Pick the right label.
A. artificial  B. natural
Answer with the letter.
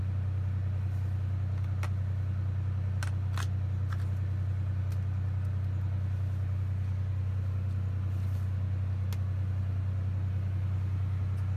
B